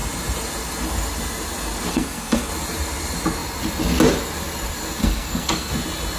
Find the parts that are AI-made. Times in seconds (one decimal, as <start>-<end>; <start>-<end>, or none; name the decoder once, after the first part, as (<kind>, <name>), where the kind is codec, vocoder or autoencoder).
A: 1.9-2.5 (codec, SNAC); 5.0-5.7